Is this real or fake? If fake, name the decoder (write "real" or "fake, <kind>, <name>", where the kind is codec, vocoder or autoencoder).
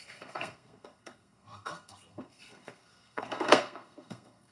fake, codec, SNAC